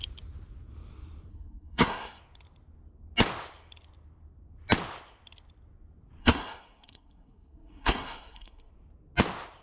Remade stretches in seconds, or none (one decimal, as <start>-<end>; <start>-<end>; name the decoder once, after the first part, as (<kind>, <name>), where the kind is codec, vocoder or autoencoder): 1.3-2.2 (codec, SNAC); 6.2-8.7